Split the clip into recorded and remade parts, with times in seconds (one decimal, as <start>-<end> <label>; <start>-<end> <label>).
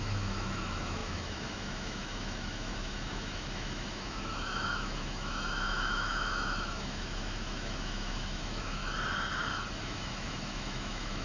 0.0-8.8 remade; 8.8-9.8 recorded; 9.8-11.2 remade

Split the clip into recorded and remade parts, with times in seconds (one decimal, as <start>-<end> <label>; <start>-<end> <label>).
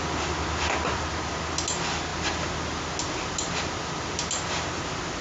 0.0-5.2 recorded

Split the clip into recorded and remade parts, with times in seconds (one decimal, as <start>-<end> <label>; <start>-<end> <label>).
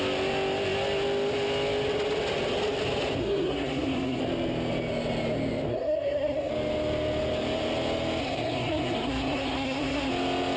0.0-3.2 recorded; 3.2-4.2 remade; 4.2-5.7 recorded; 5.7-6.5 remade; 6.5-8.2 recorded; 8.2-10.1 remade; 10.1-10.6 recorded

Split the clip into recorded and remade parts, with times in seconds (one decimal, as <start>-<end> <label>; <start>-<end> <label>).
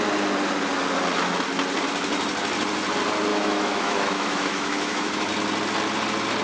0.0-3.3 recorded; 3.3-5.3 remade; 5.3-6.4 recorded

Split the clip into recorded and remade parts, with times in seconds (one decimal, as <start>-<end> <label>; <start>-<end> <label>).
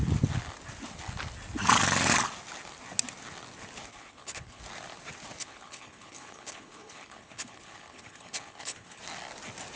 0.0-3.9 recorded; 3.9-4.6 remade; 4.6-5.4 recorded; 5.4-9.0 remade; 9.0-9.8 recorded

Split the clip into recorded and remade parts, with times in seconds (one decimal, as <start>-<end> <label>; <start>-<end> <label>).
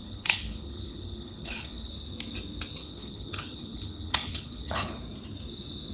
0.0-1.9 remade; 1.9-2.8 recorded; 2.8-5.0 remade; 5.0-5.9 recorded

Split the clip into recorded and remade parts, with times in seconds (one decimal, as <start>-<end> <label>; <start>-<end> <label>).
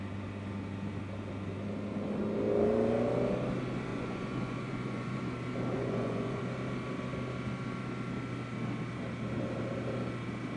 0.0-3.9 recorded; 3.9-5.2 remade; 5.2-5.7 recorded; 5.7-6.4 remade; 6.4-10.6 recorded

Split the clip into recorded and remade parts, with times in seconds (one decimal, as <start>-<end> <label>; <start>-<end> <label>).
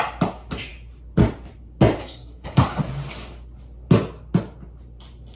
0.0-2.0 recorded; 2.0-2.8 remade; 2.8-5.4 recorded